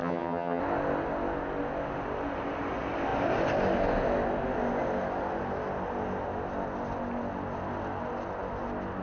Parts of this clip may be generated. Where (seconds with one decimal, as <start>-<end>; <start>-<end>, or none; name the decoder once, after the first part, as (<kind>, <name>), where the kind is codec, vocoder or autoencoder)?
0.0-0.6 (vocoder, HiFi-GAN)